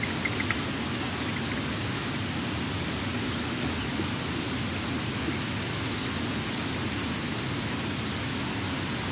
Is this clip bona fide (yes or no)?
yes